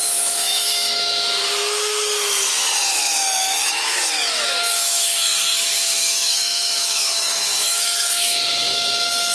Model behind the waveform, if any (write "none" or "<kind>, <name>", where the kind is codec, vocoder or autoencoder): autoencoder, DAC-VAE